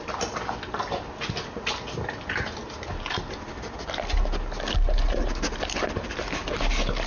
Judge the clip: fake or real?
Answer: real